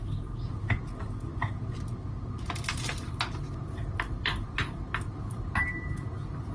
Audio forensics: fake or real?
real